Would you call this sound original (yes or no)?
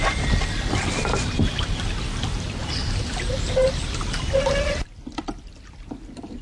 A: yes